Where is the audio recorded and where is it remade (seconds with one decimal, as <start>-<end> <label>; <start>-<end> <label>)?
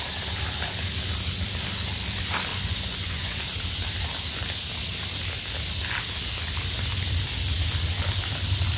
0.0-2.5 recorded; 2.5-3.4 remade; 3.4-8.8 recorded